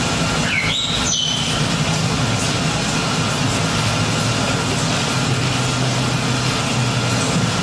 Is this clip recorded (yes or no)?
yes